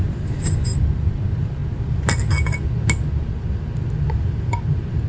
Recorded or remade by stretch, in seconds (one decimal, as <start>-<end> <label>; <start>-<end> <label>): 0.0-1.6 remade; 1.6-5.1 recorded